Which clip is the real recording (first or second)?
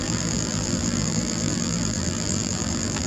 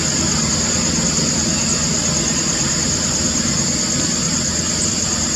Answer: second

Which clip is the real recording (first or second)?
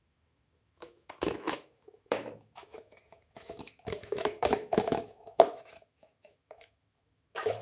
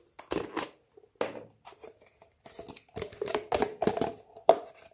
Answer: second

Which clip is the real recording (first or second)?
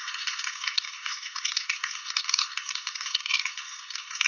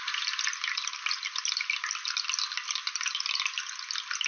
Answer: second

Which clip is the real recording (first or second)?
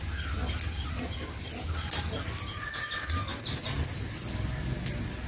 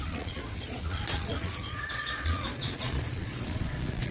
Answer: first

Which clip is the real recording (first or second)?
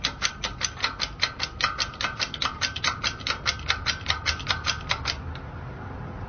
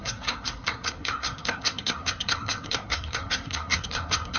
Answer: first